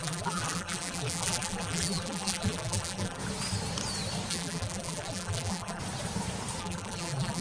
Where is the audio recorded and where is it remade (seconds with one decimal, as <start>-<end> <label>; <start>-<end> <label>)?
0.0-3.2 remade; 3.2-4.3 recorded; 4.3-5.8 remade; 5.8-6.6 recorded; 6.6-7.4 remade